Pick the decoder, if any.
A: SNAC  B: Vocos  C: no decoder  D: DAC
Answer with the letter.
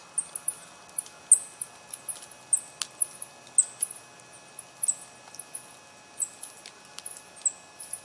C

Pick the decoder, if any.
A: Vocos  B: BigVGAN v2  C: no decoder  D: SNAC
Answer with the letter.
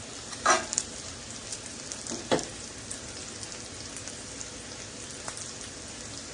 C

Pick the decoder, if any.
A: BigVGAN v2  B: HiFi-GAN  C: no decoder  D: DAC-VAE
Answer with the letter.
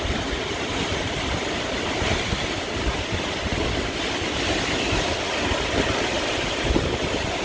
C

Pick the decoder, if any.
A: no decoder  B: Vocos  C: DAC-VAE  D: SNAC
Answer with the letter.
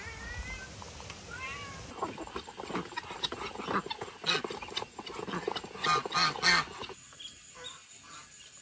A